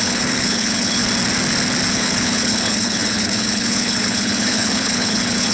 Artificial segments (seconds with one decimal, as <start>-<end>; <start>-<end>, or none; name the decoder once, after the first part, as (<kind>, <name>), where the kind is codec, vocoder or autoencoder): 0.0-1.0 (codec, HILCodec); 1.9-5.5